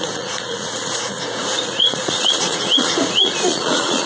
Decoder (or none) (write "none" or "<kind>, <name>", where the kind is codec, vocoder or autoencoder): vocoder, Vocos